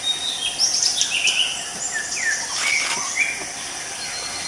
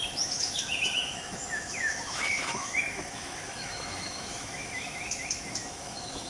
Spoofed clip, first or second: second